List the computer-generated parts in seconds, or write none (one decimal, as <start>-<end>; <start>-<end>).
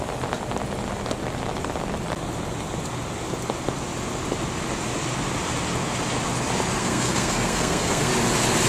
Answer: 6.8-8.1